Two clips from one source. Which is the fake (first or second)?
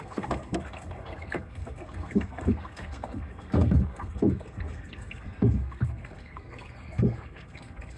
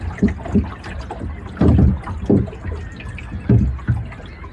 first